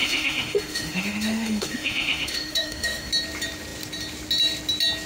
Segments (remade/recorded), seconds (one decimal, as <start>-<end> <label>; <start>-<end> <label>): 0.0-3.1 remade; 3.1-5.1 recorded